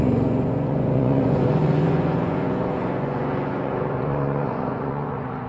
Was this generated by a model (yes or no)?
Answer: yes